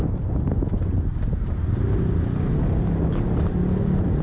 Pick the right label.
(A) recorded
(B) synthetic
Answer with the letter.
A